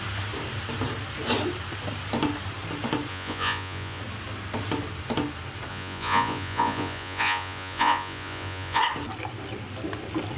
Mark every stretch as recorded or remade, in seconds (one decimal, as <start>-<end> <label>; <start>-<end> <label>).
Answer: 0.0-3.1 recorded; 3.1-4.0 remade; 4.0-5.7 recorded; 5.7-8.8 remade; 8.8-10.4 recorded